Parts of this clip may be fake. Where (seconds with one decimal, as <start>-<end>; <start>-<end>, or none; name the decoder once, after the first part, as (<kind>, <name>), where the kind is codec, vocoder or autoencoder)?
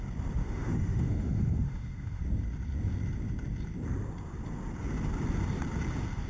0.4-2.2 (autoencoder, DAC-VAE)